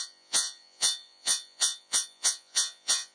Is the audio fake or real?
fake